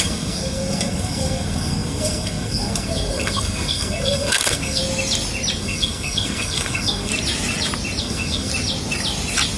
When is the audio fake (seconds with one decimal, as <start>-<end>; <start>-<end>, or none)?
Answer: 0.0-4.8; 5.6-7.1; 8.0-8.5